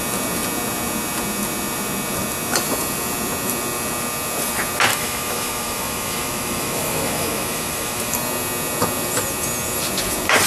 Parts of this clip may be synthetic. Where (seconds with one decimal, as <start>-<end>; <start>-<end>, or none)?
4.9-8.1